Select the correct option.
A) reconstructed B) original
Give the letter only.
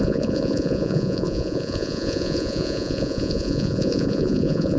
A